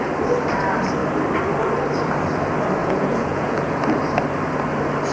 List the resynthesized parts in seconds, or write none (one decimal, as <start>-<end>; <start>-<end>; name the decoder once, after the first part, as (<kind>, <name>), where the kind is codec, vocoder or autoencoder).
2.8-3.8 (vocoder, Vocos)